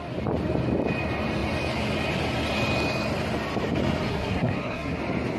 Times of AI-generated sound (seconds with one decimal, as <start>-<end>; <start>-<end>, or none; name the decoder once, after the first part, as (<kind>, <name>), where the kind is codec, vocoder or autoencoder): 4.1-5.0 (codec, SNAC)